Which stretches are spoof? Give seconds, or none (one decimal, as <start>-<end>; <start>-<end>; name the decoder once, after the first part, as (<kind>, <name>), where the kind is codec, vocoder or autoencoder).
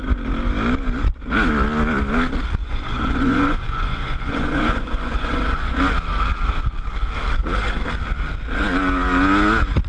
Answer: 2.6-5.8 (vocoder, Vocos)